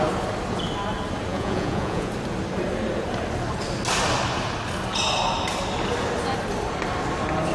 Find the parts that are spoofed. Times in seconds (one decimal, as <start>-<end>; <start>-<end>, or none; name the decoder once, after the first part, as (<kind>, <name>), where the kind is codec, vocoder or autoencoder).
1.3-2.1 (vocoder, Vocos)